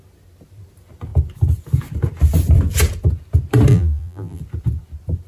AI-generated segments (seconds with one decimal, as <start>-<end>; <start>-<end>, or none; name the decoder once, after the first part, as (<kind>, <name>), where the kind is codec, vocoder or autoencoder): 3.7-4.4 (vocoder, BigVGAN v2)